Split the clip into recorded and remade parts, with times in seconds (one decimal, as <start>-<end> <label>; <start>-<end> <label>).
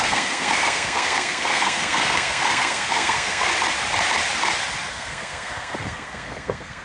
0.0-3.5 remade; 3.5-4.9 recorded; 4.9-6.8 remade